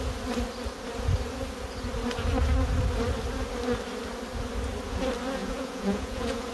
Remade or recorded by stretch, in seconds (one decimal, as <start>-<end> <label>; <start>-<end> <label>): 0.0-5.4 recorded; 5.4-6.5 remade